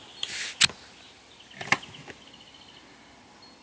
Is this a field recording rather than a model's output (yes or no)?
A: yes